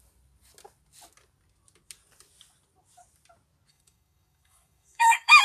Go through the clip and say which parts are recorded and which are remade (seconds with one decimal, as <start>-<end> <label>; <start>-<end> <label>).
0.0-3.7 recorded; 3.7-5.4 remade